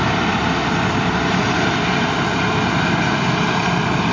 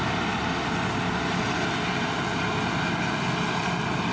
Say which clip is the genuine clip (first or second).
second